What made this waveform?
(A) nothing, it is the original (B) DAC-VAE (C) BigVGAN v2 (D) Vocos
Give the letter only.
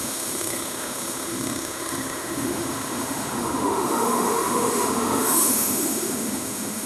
B